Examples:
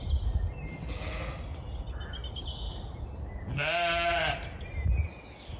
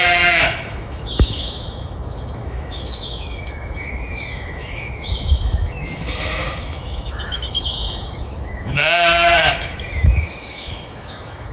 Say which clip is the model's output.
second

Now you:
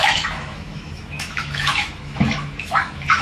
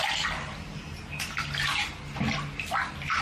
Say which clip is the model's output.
first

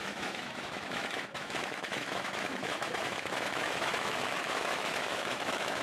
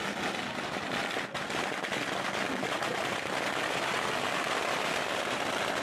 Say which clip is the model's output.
first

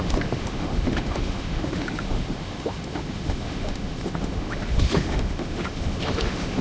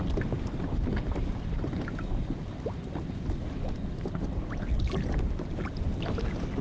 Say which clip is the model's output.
first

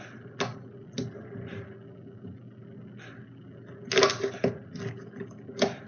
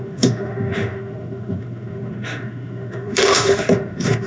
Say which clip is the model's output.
second